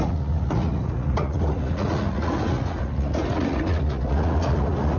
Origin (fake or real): fake